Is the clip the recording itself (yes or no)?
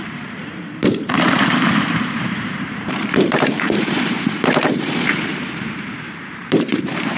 no